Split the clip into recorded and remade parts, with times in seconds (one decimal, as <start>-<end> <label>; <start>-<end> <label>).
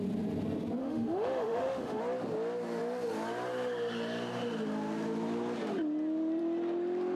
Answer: 0.0-0.8 recorded; 0.8-2.0 remade; 2.0-7.2 recorded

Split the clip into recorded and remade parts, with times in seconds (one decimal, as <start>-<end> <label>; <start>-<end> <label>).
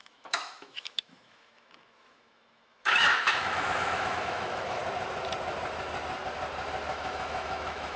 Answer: 0.0-4.8 remade; 4.8-6.9 recorded; 6.9-8.0 remade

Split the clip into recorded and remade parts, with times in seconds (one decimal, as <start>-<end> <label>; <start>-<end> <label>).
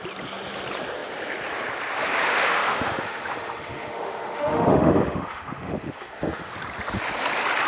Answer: 0.0-2.3 recorded; 2.3-6.5 remade; 6.5-7.7 recorded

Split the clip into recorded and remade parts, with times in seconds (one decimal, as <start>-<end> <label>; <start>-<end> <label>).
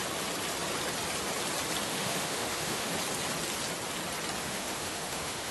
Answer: 0.0-1.9 recorded; 1.9-2.9 remade; 2.9-4.4 recorded; 4.4-5.5 remade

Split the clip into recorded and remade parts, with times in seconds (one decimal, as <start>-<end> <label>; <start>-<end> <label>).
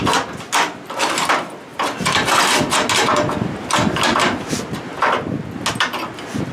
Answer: 0.0-6.5 recorded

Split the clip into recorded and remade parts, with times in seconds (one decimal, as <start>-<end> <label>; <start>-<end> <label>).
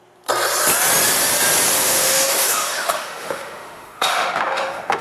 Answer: 0.0-1.8 recorded; 1.8-5.0 remade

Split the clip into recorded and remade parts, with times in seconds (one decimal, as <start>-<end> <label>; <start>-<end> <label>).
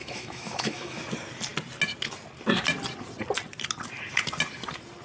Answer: 0.0-1.0 remade; 1.0-5.0 recorded